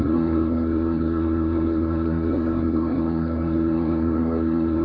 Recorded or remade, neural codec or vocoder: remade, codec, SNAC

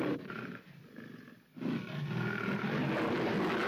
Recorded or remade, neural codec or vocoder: recorded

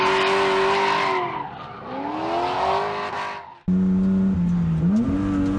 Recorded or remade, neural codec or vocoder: recorded